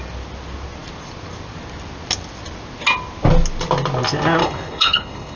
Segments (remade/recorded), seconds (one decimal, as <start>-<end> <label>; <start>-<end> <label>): 0.0-4.4 recorded; 4.4-5.4 remade